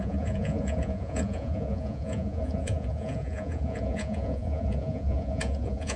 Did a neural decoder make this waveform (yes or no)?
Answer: yes